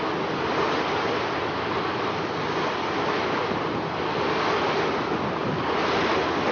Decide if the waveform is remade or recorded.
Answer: recorded